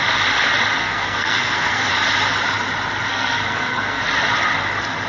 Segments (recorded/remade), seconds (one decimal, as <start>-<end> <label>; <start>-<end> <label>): 0.0-0.8 recorded; 0.8-1.9 remade; 1.9-3.1 recorded; 3.1-4.0 remade; 4.0-5.1 recorded